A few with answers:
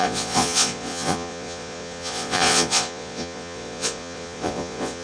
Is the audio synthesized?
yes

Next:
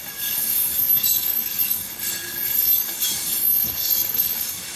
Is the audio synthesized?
yes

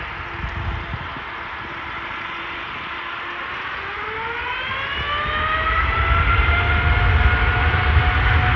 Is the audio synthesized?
no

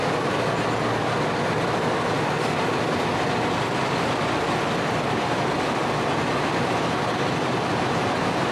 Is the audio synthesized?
no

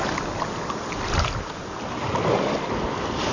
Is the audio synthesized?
no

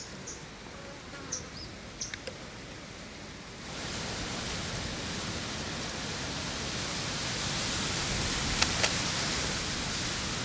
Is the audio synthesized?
no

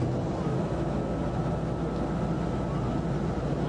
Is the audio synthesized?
no